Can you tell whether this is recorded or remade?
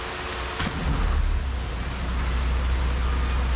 recorded